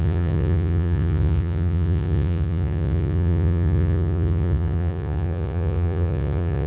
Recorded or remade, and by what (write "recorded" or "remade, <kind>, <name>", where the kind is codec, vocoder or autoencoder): remade, vocoder, Vocos